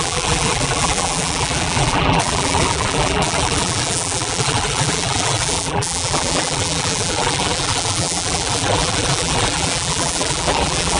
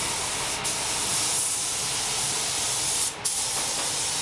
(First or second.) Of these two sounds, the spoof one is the first